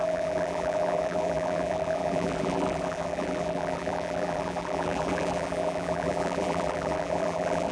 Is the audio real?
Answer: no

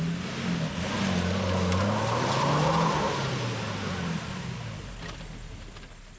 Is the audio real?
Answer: yes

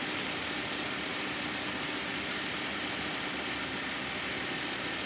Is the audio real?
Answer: yes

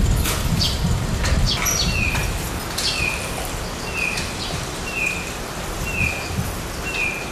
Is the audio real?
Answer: yes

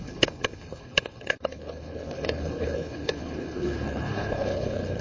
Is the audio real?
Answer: no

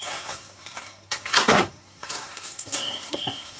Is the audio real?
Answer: no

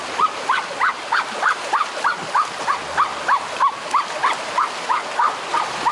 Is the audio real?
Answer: yes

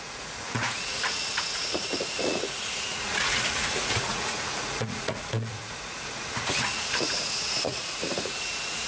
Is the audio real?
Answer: no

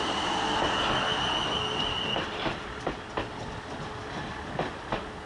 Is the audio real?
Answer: yes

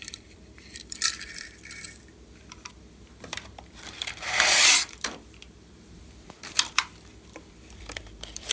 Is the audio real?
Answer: no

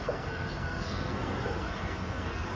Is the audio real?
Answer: no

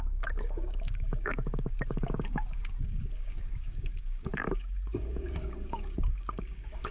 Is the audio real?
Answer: no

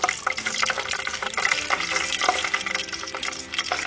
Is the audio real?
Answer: yes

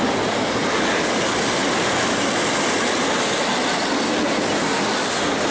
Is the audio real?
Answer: yes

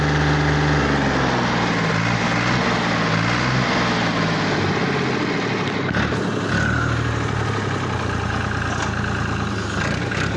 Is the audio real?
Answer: yes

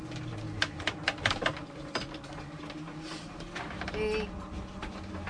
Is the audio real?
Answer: yes